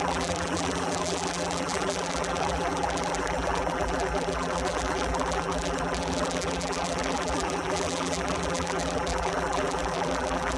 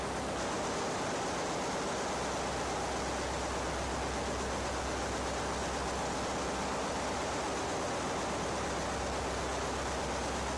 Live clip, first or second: second